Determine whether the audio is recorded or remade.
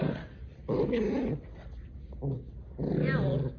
recorded